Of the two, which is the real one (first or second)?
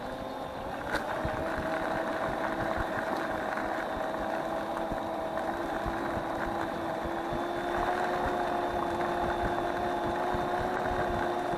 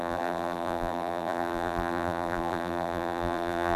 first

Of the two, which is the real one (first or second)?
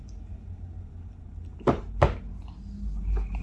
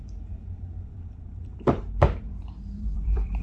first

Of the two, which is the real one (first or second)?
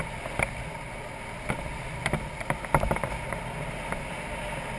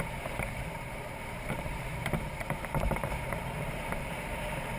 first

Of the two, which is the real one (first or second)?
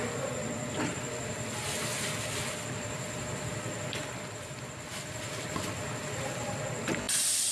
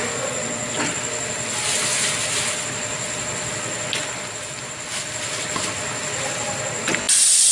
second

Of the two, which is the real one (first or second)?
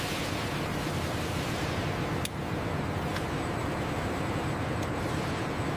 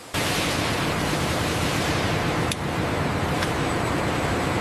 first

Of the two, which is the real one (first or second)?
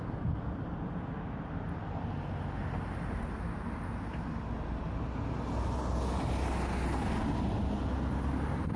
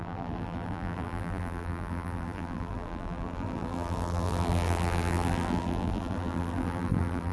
first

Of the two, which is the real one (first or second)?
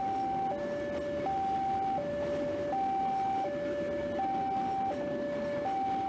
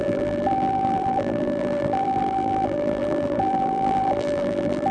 first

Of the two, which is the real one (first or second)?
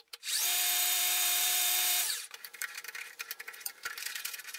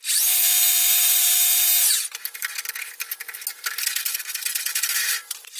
second